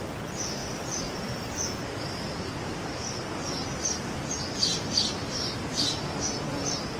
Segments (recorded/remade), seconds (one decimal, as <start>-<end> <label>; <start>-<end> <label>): 0.0-0.6 recorded; 0.6-2.0 remade; 2.0-7.0 recorded